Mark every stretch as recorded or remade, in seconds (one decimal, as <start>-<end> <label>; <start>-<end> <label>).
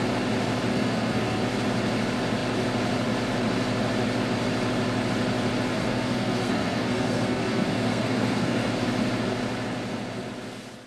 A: 0.0-0.7 recorded; 0.7-1.4 remade; 1.4-5.7 recorded; 5.7-8.7 remade; 8.7-10.9 recorded